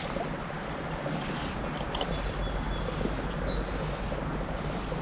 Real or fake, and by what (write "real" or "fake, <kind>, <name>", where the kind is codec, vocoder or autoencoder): real